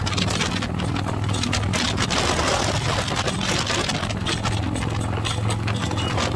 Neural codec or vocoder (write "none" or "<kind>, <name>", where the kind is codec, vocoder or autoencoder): none